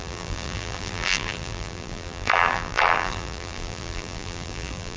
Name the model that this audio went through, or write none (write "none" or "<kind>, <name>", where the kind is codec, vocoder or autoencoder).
vocoder, BigVGAN v2